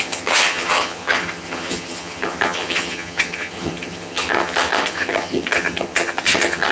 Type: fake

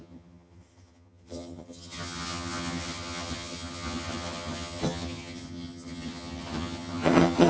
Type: fake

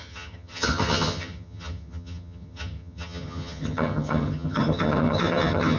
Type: fake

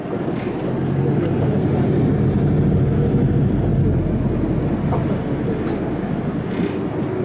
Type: real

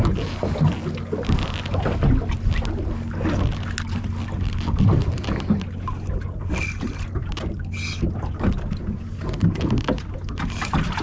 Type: real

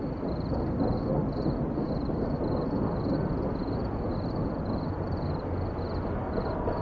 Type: real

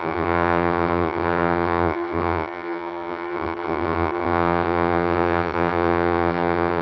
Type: fake